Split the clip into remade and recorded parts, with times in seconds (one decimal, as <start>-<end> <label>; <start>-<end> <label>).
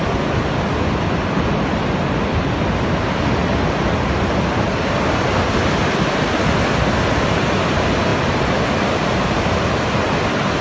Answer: 0.0-10.6 recorded